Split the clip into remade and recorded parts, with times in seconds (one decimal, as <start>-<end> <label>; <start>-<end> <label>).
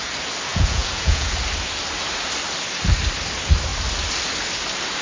0.0-0.5 recorded; 0.5-1.3 remade; 1.3-5.0 recorded